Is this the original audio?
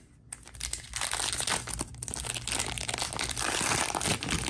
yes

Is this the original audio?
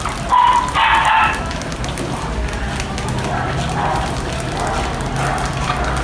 yes